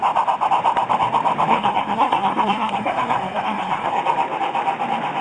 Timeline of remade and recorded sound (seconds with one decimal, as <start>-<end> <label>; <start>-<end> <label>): 0.0-1.5 recorded; 1.5-4.0 remade; 4.0-5.2 recorded